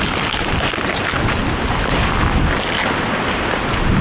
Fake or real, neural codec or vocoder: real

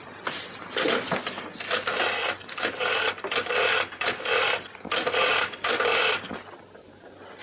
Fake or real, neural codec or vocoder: real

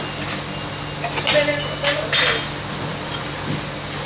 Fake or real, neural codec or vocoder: real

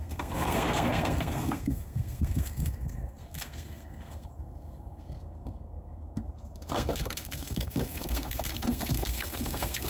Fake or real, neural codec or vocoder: fake, codec, SNAC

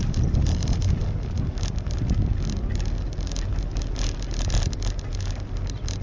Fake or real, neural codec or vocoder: real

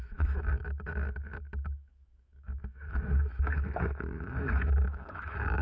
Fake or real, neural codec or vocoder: fake, autoencoder, DAC-VAE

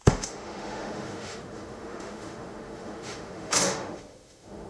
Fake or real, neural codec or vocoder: fake, autoencoder, DAC-VAE